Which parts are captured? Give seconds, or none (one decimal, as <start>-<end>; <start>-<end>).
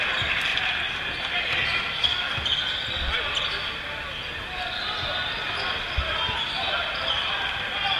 0.0-8.0